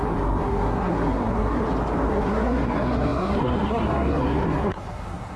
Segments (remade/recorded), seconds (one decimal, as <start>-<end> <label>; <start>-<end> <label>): 0.0-1.6 remade; 1.6-2.1 recorded; 2.1-5.4 remade